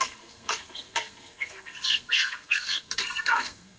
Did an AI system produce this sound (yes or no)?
yes